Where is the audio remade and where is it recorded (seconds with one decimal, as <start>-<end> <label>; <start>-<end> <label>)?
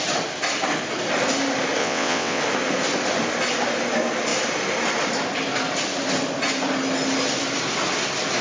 0.0-1.8 recorded; 1.8-2.4 remade; 2.4-8.4 recorded